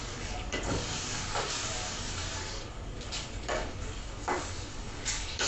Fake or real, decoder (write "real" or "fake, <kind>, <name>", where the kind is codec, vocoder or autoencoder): fake, codec, DAC